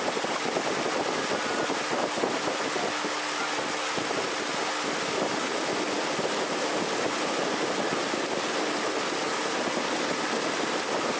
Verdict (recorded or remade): recorded